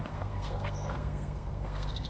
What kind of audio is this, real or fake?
fake